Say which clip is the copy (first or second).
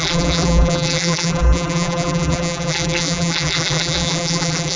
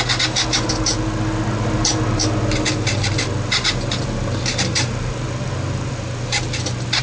first